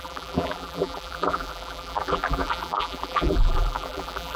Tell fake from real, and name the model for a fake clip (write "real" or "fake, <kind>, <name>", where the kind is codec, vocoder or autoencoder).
fake, vocoder, BigVGAN v2